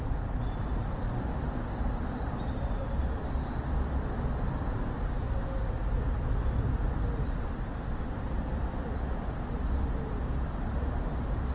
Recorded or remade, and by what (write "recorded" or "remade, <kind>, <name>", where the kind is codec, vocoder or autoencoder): recorded